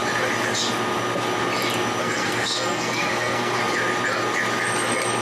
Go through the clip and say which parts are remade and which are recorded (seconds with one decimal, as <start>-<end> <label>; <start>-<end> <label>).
0.0-2.0 recorded; 2.0-3.6 remade; 3.6-5.2 recorded